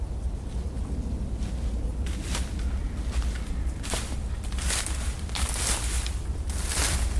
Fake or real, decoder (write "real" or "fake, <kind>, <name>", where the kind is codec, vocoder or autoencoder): real